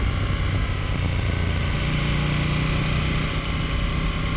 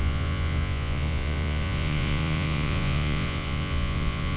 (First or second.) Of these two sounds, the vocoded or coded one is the second